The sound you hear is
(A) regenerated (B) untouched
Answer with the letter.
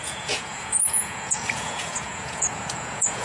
A